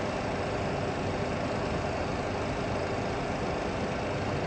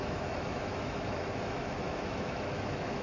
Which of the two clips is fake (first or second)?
second